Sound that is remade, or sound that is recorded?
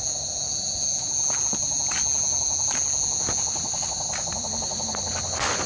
recorded